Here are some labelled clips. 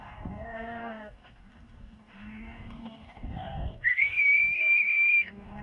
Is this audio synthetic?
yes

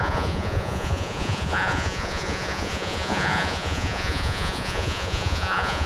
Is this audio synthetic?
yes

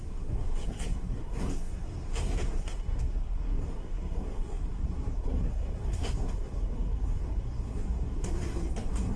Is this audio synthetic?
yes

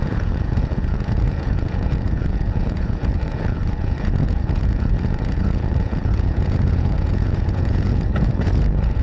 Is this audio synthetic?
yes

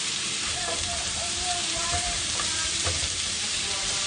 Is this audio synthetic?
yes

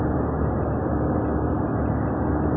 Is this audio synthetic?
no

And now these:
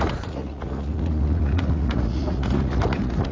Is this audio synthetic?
yes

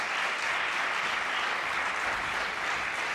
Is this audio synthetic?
no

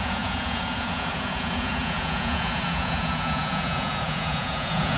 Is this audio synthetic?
yes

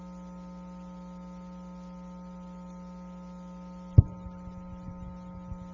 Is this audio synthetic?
no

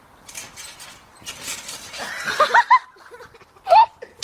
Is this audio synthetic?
no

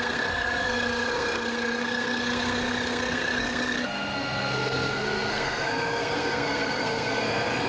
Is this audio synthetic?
yes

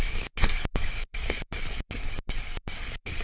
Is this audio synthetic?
yes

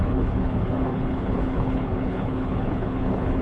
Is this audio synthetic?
yes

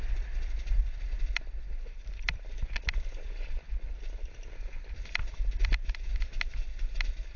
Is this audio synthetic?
no